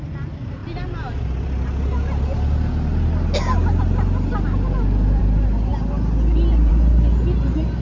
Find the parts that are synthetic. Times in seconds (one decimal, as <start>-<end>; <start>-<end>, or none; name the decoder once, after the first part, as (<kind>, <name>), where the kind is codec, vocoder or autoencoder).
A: none